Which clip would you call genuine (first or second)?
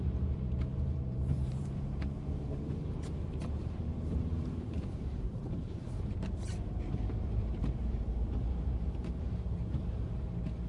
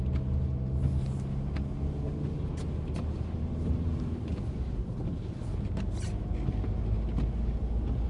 second